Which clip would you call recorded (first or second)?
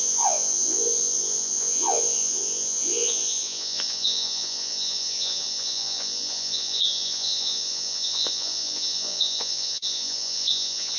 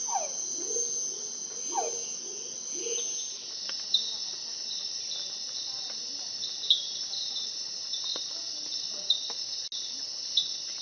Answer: second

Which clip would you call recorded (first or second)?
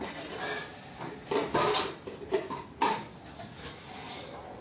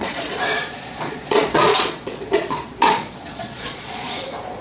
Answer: first